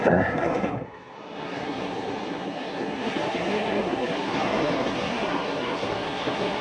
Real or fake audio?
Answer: fake